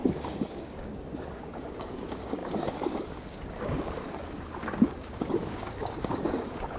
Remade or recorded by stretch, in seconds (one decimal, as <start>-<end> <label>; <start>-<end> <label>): 0.0-6.8 remade